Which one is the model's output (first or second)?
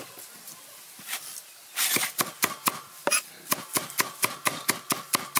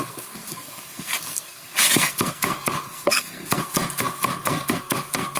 second